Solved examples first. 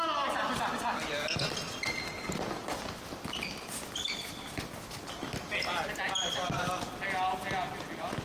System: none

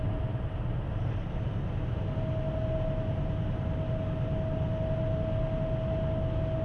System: none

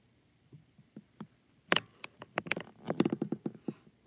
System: none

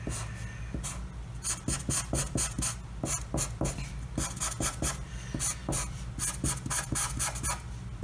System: none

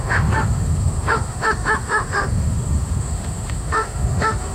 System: autoencoder, DAC-VAE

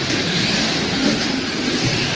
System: none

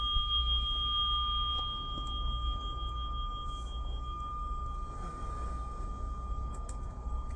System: codec, DAC